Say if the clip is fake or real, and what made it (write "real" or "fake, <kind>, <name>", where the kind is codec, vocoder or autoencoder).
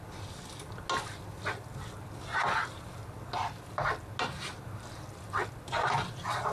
real